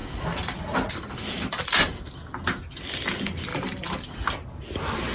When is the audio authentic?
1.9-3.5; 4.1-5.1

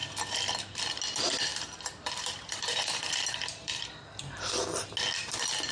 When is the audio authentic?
0.8-1.5; 4.9-5.7

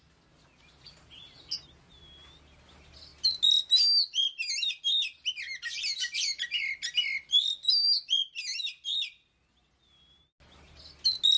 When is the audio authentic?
0.0-11.4

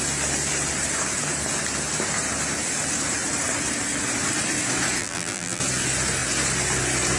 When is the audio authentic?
0.0-5.0; 5.6-7.2